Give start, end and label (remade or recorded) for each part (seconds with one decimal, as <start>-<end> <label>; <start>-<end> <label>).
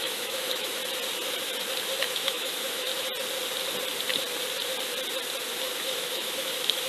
0.0-0.8 remade; 0.8-2.0 recorded; 2.0-2.9 remade; 2.9-5.6 recorded; 5.6-6.9 remade